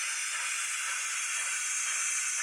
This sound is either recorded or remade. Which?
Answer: recorded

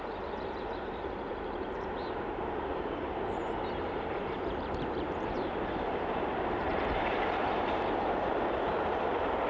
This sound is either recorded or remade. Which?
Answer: remade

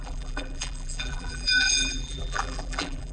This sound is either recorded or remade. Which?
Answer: remade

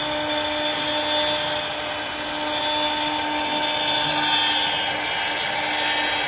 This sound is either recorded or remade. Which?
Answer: recorded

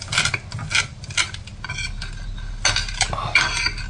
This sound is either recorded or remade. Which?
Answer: recorded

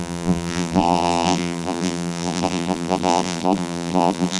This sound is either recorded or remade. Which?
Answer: remade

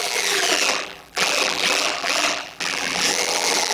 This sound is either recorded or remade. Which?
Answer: remade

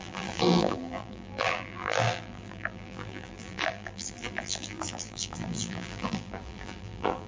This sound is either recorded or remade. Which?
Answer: remade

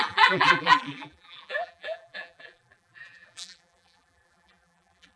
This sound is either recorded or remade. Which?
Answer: remade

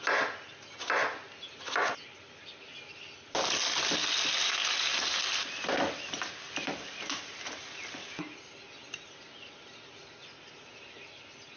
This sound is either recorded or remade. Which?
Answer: recorded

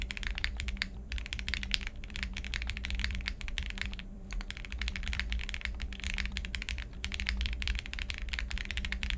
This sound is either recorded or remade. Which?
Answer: remade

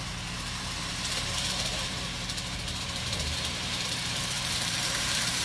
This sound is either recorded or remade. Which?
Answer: remade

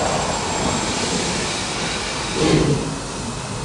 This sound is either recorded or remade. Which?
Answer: remade